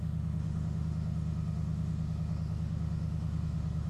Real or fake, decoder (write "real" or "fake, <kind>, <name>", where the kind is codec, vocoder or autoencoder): fake, autoencoder, DAC-VAE